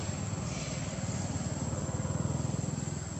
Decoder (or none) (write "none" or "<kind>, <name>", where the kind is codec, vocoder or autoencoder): none